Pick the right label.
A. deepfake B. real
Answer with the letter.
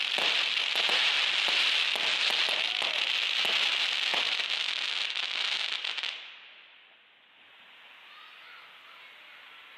B